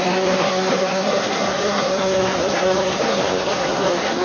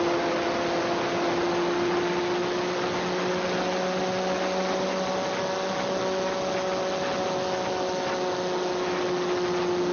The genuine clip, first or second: second